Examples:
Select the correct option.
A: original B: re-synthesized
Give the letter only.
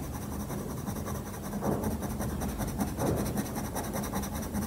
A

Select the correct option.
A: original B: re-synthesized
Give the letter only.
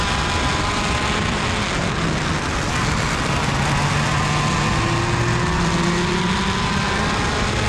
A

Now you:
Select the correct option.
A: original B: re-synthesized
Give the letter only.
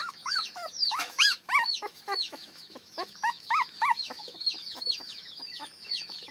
B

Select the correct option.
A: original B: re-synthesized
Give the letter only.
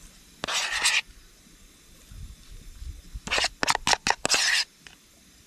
A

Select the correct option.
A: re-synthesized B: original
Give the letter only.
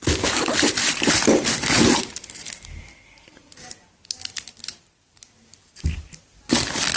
A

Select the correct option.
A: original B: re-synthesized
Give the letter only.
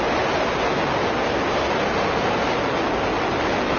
A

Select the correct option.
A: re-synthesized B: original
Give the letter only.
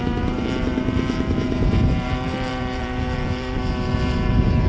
A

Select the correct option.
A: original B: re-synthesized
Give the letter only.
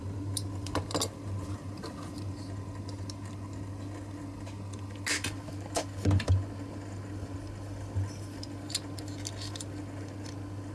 A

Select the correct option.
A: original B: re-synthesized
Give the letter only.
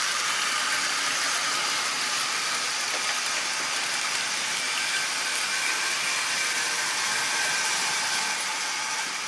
A